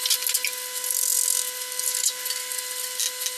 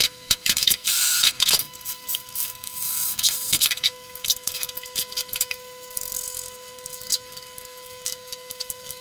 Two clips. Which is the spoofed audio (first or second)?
second